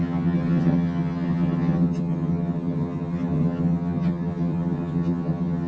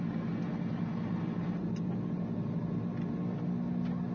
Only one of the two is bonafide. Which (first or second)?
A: second